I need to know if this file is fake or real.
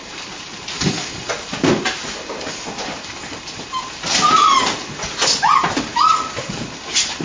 real